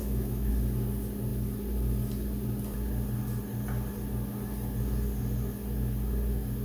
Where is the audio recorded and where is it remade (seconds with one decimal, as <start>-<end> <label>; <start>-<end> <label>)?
0.0-0.5 remade; 0.5-6.6 recorded